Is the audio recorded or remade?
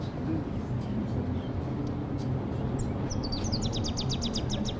recorded